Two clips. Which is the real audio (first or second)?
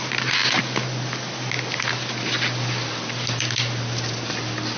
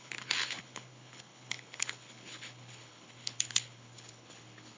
first